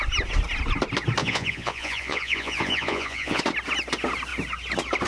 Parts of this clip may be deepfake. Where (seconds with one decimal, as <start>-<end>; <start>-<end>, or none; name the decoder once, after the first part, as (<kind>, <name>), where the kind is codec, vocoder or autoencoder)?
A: 1.2-3.4 (vocoder, Vocos)

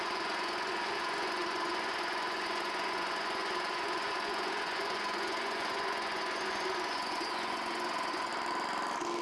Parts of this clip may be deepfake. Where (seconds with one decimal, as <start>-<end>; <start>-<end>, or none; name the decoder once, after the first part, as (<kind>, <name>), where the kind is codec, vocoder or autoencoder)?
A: 0.0-8.3 (vocoder, Vocos)

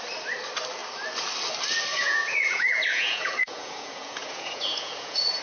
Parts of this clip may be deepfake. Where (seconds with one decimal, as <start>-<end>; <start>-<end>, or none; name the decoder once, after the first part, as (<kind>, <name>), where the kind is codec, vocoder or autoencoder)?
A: 1.9-5.4 (vocoder, Vocos)

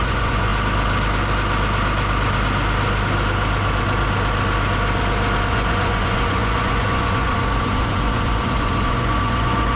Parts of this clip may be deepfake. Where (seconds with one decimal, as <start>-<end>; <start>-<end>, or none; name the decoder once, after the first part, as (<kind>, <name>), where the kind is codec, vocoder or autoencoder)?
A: 0.0-0.5 (vocoder, Vocos); 5.5-9.8

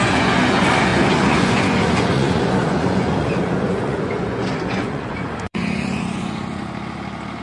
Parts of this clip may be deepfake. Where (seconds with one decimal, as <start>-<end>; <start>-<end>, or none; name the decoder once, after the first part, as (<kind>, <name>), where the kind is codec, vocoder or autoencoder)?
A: 0.0-6.6 (vocoder, Vocos)